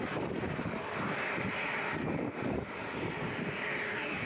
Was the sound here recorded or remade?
recorded